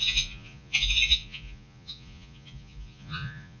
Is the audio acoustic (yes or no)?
no